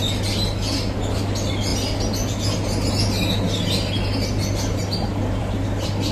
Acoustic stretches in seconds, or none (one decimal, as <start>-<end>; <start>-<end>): 0.0-6.1